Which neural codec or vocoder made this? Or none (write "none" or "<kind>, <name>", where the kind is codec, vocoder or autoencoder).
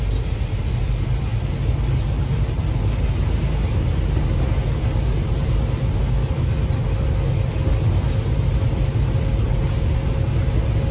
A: none